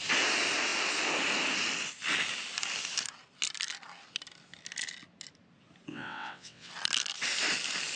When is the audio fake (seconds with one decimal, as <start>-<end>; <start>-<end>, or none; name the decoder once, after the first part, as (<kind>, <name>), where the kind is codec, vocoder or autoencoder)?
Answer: 5.9-6.7 (vocoder, WaveNeXt)